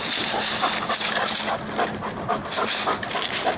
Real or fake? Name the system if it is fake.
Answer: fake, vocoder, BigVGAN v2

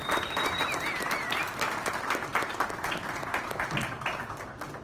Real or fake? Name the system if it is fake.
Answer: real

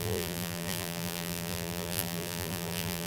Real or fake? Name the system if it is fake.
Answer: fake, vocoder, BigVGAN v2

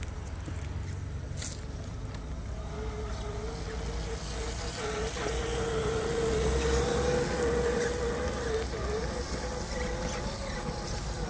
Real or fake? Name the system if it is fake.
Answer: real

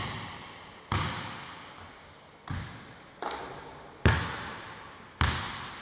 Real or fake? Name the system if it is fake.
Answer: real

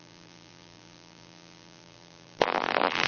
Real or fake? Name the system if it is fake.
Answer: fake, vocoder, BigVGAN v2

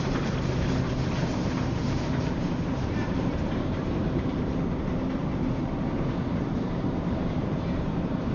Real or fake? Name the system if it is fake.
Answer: fake, vocoder, BigVGAN v2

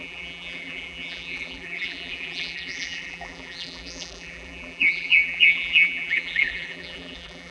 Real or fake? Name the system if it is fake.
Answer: fake, vocoder, BigVGAN v2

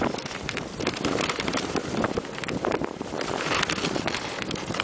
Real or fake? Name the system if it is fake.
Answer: fake, vocoder, BigVGAN v2